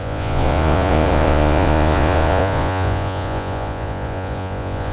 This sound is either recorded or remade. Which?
remade